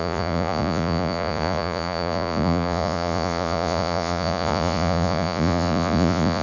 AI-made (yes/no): yes